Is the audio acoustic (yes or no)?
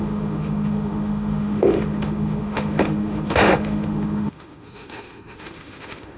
no